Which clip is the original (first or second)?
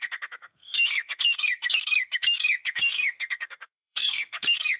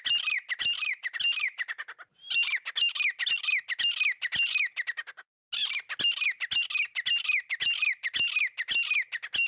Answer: second